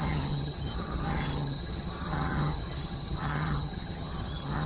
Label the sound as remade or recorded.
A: remade